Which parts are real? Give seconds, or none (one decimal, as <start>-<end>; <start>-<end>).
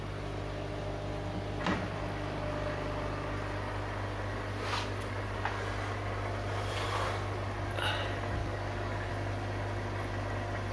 0.0-8.4; 9.1-10.7